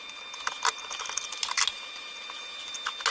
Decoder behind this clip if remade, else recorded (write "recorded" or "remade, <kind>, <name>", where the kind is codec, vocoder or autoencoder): recorded